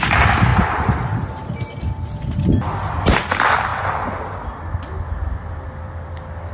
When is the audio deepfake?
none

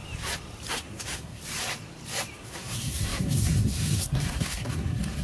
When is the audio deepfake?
0.7-1.4 (codec, SNAC); 2.4-5.2

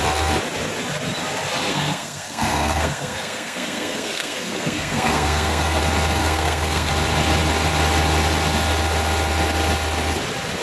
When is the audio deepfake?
1.7-5.8 (codec, SNAC); 6.2-6.9

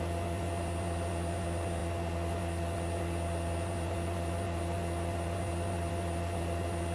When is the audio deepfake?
none

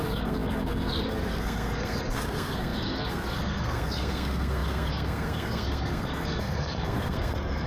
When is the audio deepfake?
0.0-7.7 (codec, SNAC)

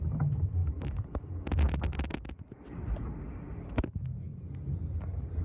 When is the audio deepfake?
none

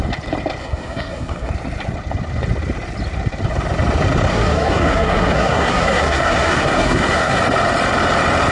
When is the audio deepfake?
0.6-1.5 (codec, SNAC); 4.3-7.4

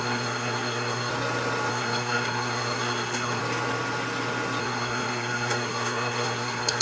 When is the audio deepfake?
0.0-1.1 (codec, SNAC); 1.7-3.4; 4.6-6.8